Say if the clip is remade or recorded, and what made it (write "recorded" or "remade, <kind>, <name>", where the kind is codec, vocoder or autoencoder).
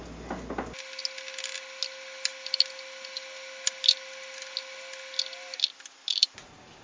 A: recorded